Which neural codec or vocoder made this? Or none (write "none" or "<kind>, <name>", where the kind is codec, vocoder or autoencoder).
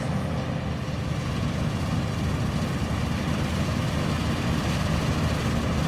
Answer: none